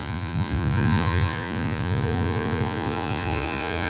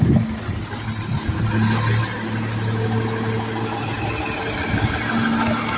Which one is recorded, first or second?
second